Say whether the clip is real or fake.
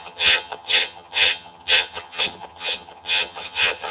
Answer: fake